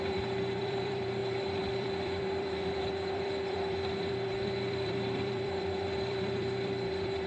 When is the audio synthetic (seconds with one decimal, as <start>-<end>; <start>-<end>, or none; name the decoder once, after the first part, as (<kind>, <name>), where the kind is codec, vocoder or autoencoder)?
0.0-7.3 (vocoder, BigVGAN v2)